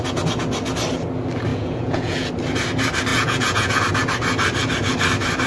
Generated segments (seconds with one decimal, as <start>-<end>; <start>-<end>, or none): 1.5-2.3; 3.1-3.8